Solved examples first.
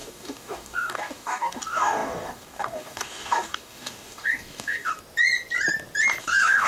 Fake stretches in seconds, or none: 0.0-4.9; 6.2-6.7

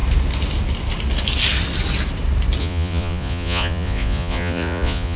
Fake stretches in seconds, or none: 2.6-5.2

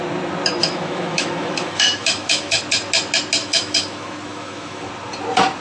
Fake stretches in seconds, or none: 0.6-2.6; 3.4-4.9

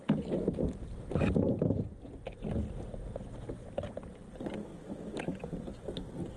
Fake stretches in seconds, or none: 4.7-5.4